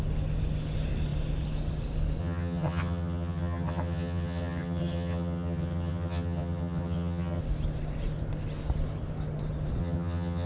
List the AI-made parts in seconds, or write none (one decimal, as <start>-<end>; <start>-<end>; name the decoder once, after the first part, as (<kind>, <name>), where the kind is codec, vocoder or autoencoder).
2.2-7.4 (vocoder, HiFi-GAN); 9.8-10.5